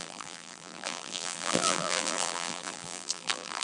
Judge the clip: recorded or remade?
remade